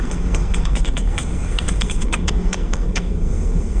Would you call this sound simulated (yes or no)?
yes